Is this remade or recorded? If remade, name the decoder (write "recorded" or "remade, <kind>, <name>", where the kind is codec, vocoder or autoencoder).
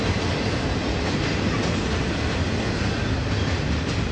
recorded